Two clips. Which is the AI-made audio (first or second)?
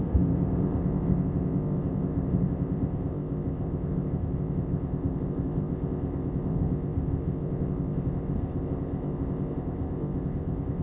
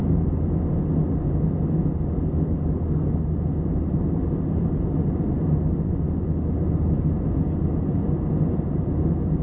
first